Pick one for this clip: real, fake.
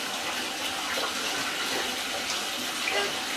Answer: real